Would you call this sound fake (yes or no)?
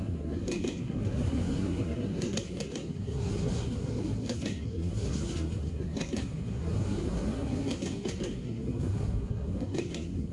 yes